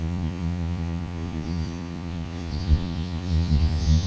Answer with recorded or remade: remade